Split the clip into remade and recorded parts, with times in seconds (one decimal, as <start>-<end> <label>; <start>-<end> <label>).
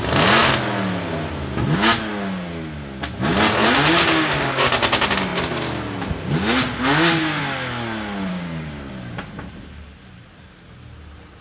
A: 0.0-3.6 recorded; 3.6-4.7 remade; 4.7-8.3 recorded; 8.3-8.9 remade; 8.9-11.4 recorded